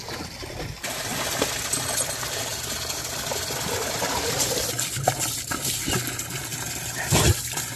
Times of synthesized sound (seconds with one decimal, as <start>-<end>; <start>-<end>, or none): 2.5-5.9; 6.5-7.8